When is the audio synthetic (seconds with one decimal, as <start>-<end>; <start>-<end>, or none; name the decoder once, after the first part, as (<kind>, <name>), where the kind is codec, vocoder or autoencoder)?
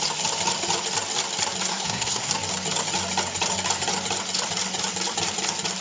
1.7-2.3 (codec, SNAC)